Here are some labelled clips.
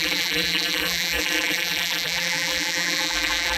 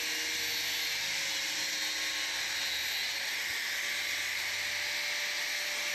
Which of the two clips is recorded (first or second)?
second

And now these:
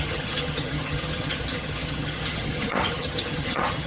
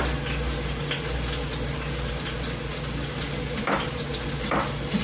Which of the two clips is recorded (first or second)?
second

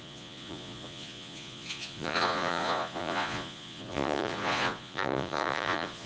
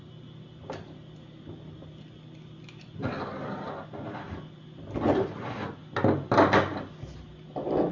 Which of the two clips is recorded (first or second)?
second